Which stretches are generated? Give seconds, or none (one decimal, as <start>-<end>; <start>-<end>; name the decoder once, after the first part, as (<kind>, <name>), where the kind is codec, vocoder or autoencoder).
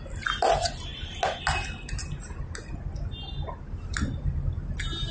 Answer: none